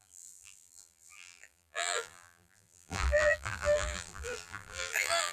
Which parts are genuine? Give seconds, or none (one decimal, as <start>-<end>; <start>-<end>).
none